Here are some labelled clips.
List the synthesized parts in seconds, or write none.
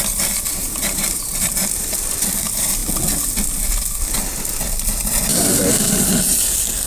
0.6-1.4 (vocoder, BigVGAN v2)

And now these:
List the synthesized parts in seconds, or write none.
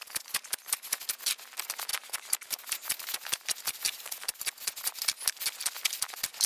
0.0-1.0 (vocoder, BigVGAN v2); 1.9-4.4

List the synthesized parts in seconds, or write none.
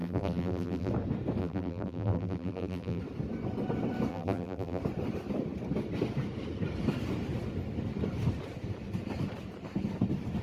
0.0-0.9 (vocoder, BigVGAN v2); 1.4-3.0; 4.1-4.8